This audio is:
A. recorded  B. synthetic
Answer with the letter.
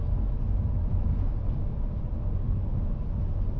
A